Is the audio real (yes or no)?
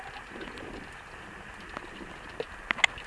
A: yes